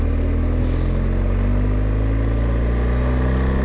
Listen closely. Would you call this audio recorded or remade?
recorded